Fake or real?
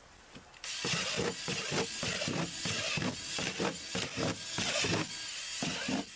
real